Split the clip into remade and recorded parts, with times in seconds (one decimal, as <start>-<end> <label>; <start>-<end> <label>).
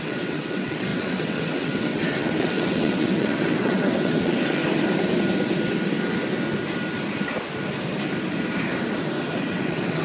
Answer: 0.0-4.6 remade; 4.6-9.3 recorded; 9.3-10.0 remade